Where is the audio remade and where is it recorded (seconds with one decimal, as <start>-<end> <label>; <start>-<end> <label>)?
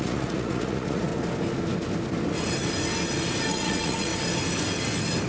0.0-1.1 remade; 1.1-3.5 recorded; 3.5-4.1 remade; 4.1-5.3 recorded